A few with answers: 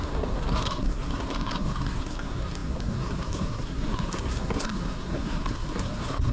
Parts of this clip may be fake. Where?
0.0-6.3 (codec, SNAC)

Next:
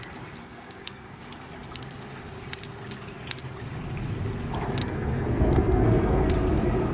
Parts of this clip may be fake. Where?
0.4-1.2 (codec, SNAC); 4.8-6.3